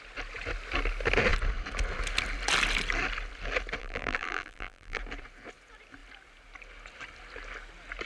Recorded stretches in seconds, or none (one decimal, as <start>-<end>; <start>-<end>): 0.0-3.8; 5.0-8.1